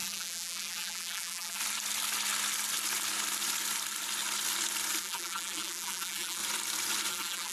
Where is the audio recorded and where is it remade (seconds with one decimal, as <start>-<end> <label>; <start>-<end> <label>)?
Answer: 0.0-1.6 remade; 1.6-5.0 recorded; 5.0-6.4 remade; 6.4-7.1 recorded; 7.1-7.5 remade

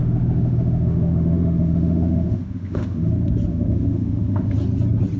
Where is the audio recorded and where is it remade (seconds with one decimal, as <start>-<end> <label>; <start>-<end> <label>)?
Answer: 0.0-3.1 remade; 3.1-3.5 recorded; 3.5-4.5 remade; 4.5-5.2 recorded